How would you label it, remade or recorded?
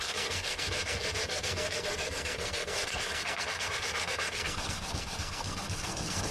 remade